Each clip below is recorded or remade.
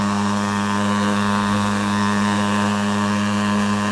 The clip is remade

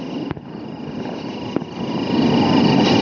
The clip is recorded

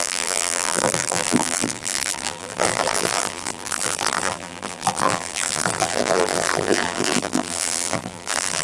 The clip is remade